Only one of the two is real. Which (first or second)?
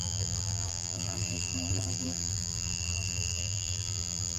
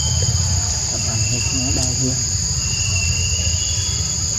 second